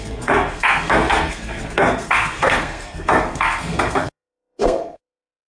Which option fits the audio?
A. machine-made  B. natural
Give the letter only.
A